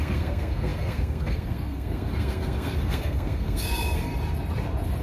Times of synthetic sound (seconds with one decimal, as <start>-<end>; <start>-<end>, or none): 0.0-4.1